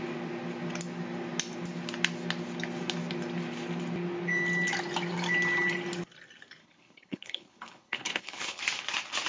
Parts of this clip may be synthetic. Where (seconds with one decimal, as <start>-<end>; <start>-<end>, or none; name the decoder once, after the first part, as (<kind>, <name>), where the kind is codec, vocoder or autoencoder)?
6.6-8.6 (codec, HILCodec)

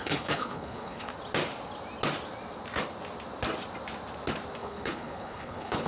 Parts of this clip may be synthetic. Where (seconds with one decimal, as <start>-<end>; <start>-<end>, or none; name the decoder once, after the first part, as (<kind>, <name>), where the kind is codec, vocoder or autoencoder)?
0.0-1.1 (codec, HILCodec); 4.6-5.9

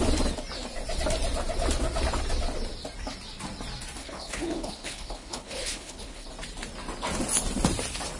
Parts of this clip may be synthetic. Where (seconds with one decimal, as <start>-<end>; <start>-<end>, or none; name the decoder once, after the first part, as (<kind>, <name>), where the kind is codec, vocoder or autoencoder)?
4.0-6.3 (codec, HILCodec)

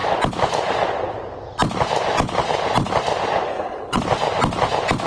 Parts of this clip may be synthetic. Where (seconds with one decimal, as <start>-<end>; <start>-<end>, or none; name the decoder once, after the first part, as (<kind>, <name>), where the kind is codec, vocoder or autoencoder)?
3.5-4.0 (codec, HILCodec)